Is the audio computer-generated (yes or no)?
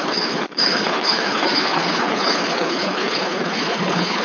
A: yes